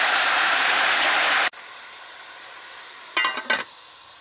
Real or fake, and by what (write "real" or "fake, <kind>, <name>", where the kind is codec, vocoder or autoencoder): real